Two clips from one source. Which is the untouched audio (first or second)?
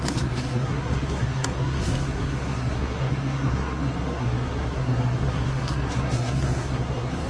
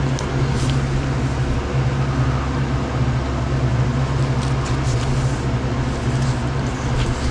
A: second